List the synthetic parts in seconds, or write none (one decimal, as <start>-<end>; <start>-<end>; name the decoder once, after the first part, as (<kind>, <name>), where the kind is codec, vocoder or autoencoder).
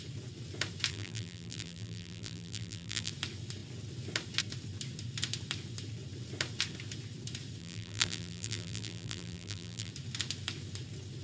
0.9-3.1 (vocoder, BigVGAN v2); 7.6-9.9